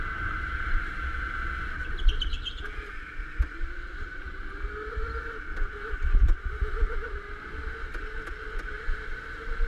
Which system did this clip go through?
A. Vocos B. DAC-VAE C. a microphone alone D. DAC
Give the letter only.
C